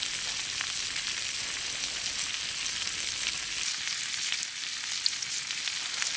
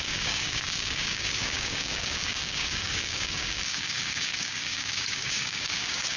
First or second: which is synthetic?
second